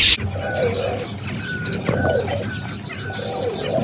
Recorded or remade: recorded